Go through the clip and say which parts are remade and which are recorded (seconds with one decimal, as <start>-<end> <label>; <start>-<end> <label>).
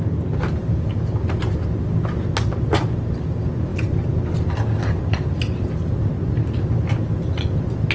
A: 0.0-0.6 recorded; 0.6-1.5 remade; 1.5-3.7 recorded; 3.7-4.4 remade; 4.4-7.9 recorded